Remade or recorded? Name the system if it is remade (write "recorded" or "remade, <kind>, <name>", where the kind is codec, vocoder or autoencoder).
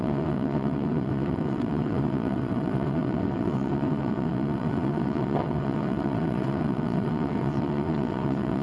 remade, vocoder, WaveNeXt